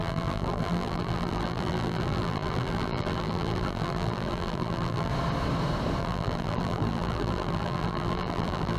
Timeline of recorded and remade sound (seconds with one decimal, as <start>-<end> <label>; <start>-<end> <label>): 0.0-5.1 remade; 5.1-6.0 recorded; 6.0-8.8 remade